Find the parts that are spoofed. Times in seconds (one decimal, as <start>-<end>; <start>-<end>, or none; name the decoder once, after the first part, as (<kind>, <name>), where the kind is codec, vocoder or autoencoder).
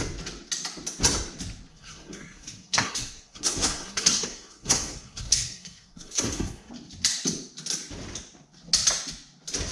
1.7-6.7 (codec, SNAC)